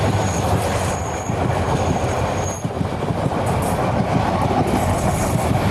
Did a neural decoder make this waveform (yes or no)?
no